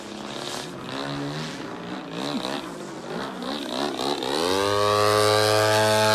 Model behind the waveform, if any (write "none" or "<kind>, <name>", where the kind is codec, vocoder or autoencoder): none